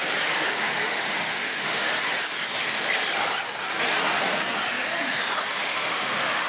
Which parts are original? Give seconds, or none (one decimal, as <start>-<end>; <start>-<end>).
0.0-0.5; 1.9-5.6